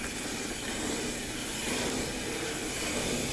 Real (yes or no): yes